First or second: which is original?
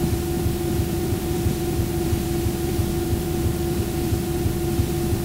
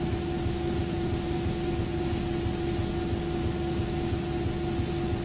second